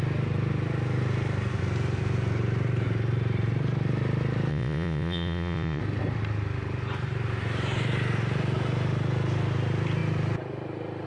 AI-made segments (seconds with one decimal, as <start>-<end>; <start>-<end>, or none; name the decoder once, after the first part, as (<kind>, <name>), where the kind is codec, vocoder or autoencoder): 4.5-5.8 (vocoder, Vocos)